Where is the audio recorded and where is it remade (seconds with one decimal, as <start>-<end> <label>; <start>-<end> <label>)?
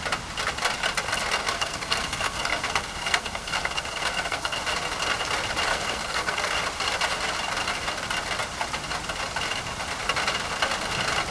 0.0-1.4 recorded; 1.4-4.6 remade; 4.6-5.7 recorded; 5.7-6.5 remade; 6.5-11.3 recorded